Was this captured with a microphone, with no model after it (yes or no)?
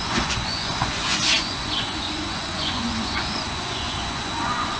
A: no